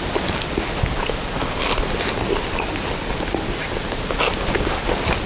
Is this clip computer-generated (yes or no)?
no